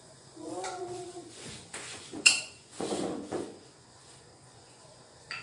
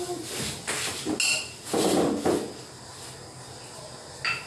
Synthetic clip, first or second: first